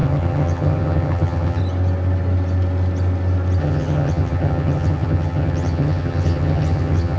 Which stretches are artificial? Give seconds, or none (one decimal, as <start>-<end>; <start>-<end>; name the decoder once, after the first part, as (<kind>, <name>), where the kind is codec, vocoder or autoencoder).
0.0-1.6 (vocoder, HiFi-GAN); 3.6-7.2